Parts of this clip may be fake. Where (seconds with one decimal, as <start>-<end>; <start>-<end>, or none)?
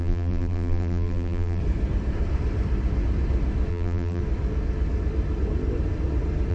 0.0-1.6; 3.7-4.2